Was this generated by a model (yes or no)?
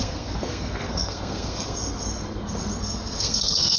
yes